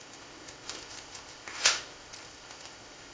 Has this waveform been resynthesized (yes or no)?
yes